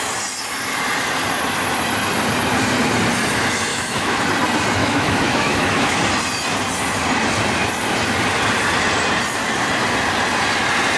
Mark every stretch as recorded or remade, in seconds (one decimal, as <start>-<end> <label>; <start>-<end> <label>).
0.0-3.7 recorded; 3.7-4.2 remade; 4.2-4.8 recorded; 4.8-6.0 remade; 6.0-11.0 recorded